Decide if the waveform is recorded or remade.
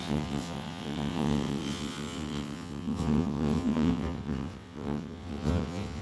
remade